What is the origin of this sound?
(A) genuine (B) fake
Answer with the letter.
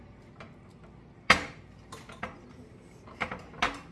A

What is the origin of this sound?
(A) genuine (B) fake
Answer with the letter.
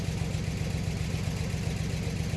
A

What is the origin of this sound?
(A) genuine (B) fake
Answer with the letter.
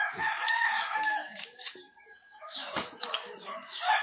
B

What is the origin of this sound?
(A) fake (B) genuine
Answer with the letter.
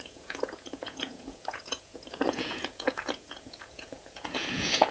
A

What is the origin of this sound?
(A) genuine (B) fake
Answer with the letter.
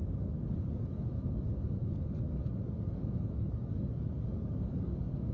B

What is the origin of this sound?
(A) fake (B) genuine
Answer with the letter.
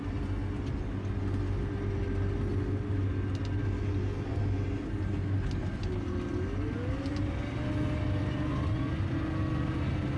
B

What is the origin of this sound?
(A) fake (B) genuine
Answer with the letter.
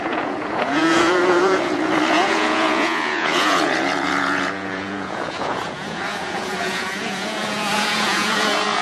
A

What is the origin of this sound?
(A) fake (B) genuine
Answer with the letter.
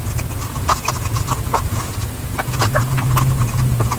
A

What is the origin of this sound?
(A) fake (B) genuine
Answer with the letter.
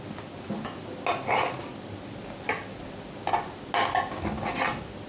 B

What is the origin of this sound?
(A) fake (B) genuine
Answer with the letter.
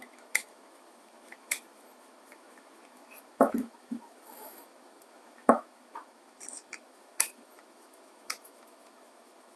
A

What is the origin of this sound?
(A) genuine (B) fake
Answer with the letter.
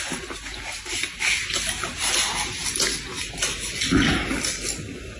A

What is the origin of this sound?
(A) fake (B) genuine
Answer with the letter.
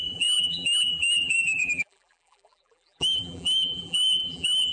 A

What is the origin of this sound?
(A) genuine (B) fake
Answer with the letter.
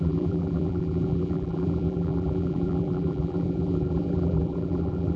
B